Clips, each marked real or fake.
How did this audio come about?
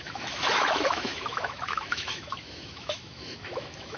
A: fake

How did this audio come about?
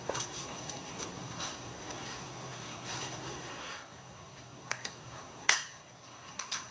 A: fake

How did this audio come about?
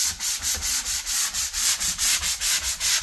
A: fake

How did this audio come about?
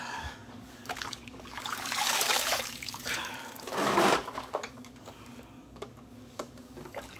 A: fake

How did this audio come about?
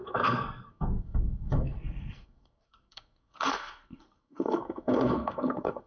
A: fake